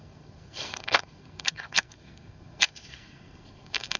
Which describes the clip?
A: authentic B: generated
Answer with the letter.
B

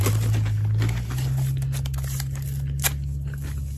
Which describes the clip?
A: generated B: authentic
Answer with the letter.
B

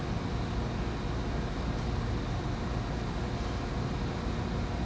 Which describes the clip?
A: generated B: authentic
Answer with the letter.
B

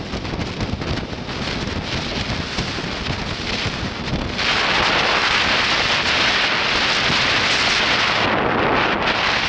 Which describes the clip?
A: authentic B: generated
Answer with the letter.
A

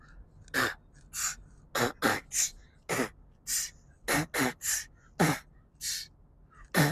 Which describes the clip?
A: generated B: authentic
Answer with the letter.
B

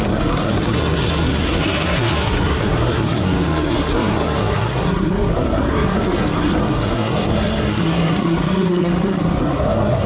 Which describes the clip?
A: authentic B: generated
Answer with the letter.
B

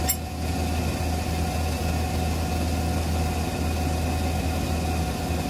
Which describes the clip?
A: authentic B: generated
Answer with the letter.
A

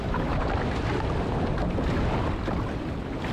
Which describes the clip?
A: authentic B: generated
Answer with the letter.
A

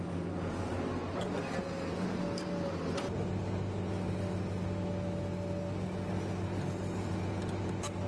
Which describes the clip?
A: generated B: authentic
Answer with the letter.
B